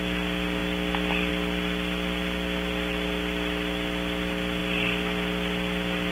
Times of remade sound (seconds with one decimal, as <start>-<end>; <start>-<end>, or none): none